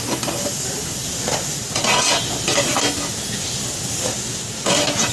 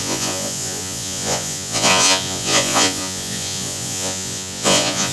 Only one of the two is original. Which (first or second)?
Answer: first